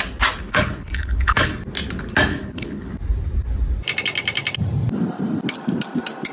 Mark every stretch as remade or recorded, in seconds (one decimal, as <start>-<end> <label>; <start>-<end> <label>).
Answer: 0.0-0.4 recorded; 0.4-1.5 remade; 1.5-2.3 recorded; 2.3-2.9 remade; 2.9-6.3 recorded